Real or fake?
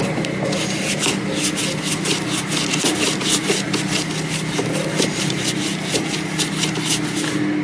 real